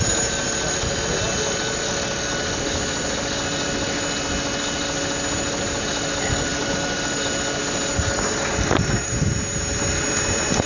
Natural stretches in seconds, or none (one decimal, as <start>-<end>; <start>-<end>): 0.0-10.7

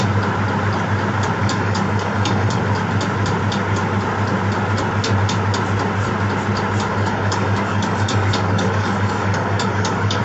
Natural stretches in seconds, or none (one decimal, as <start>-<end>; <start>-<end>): 0.0-1.4; 2.6-6.9

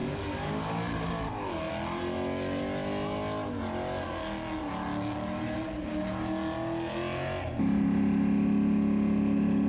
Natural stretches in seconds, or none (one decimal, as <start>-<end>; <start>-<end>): 1.7-9.7

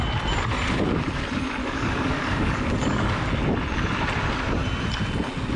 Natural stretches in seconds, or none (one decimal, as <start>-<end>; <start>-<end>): 0.0-1.6; 3.3-5.6

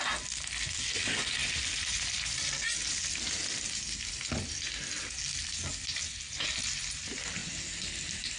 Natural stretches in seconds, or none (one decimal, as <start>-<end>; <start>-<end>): 0.0-8.4